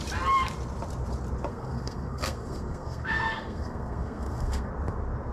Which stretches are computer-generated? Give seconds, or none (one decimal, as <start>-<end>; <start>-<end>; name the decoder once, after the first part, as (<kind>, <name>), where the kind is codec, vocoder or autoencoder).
1.5-4.7 (codec, SNAC)